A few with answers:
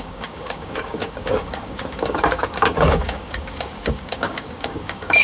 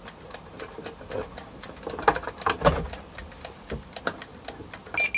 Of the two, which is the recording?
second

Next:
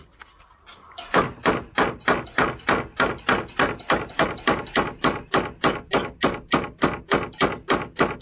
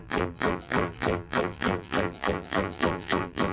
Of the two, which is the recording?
first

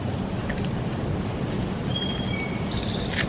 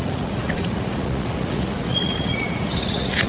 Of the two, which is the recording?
first